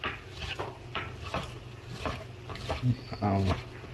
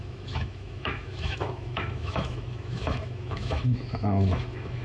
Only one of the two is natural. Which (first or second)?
first